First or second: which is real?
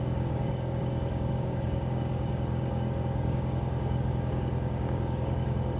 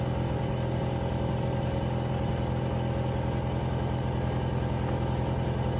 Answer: second